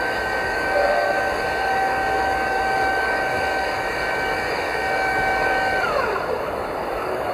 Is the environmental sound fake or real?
fake